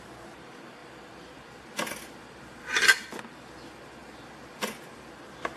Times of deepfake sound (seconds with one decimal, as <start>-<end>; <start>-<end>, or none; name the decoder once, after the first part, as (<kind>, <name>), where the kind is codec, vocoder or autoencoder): none